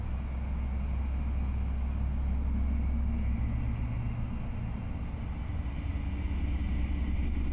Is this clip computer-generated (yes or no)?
no